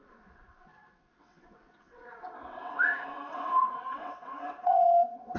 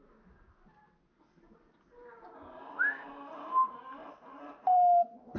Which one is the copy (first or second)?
first